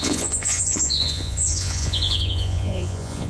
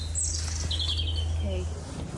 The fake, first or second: first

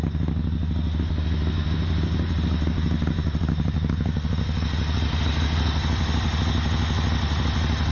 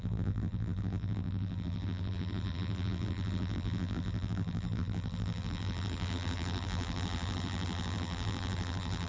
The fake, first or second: second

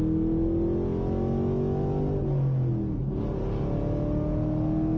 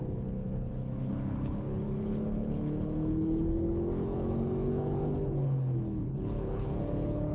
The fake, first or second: second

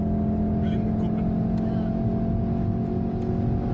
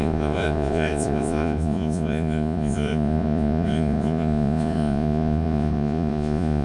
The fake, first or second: second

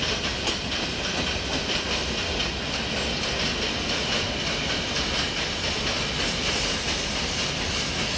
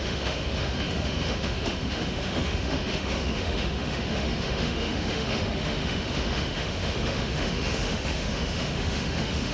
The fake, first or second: second